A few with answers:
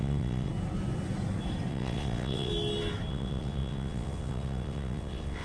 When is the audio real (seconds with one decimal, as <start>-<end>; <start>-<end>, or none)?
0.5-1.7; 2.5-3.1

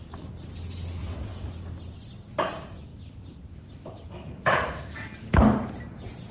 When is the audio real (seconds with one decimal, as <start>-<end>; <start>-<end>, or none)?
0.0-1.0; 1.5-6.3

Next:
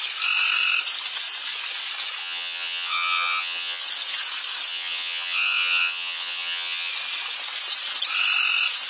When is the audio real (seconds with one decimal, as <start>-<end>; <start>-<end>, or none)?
0.0-2.2; 3.8-4.7; 6.9-8.9

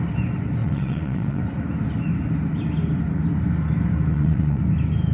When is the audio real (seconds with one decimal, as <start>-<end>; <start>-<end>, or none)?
0.0-0.6; 1.4-4.1; 4.6-5.1

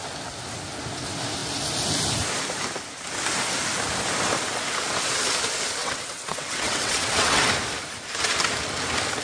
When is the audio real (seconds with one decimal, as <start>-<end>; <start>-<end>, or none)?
0.0-5.8; 7.4-9.2